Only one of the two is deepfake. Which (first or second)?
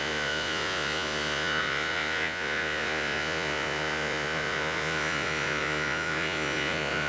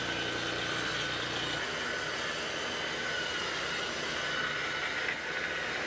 first